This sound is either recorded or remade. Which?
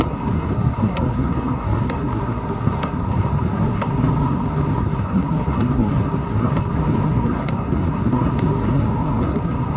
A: remade